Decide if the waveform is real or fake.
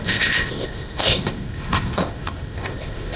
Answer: fake